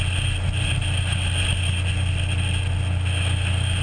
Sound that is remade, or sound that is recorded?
recorded